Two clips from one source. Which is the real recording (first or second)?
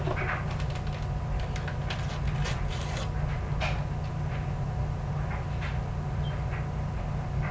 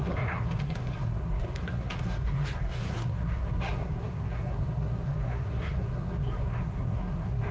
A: first